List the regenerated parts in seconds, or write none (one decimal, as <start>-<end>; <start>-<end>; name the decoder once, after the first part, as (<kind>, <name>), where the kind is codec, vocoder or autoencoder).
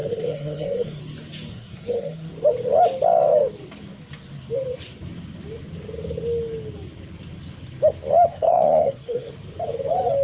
0.0-1.0 (codec, SNAC); 1.5-2.3; 8.3-9.3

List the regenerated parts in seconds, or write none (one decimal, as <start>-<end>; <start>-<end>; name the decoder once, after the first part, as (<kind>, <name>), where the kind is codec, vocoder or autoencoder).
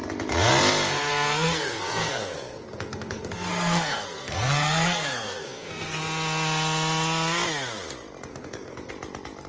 1.1-6.0 (codec, SNAC); 8.3-8.9